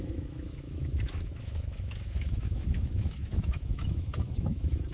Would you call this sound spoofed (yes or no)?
yes